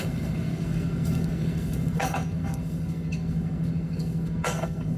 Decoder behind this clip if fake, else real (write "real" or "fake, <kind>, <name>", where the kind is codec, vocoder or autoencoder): fake, codec, SNAC